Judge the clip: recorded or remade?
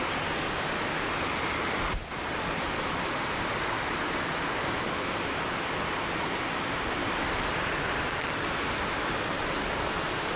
recorded